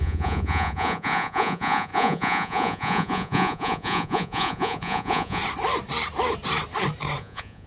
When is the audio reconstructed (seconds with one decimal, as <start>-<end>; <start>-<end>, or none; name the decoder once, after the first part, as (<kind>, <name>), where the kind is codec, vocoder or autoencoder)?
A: 0.0-5.4 (vocoder, Vocos); 7.2-7.7